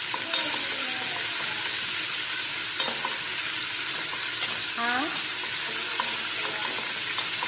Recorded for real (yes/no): yes